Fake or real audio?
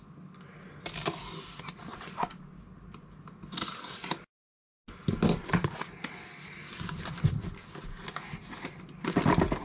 real